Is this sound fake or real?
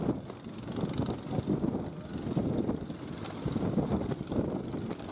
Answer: real